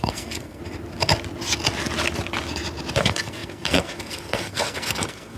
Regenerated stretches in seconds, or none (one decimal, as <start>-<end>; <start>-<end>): 0.0-0.6; 3.0-5.4